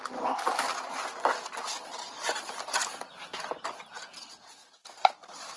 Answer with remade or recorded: recorded